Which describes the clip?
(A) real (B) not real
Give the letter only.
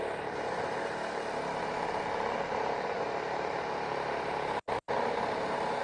A